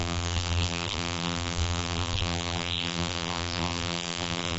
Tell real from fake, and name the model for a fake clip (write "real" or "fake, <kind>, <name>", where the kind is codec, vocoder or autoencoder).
fake, vocoder, BigVGAN v2